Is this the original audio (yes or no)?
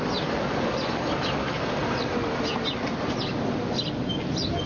yes